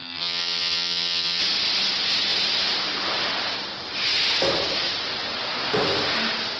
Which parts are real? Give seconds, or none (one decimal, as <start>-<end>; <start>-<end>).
1.4-6.6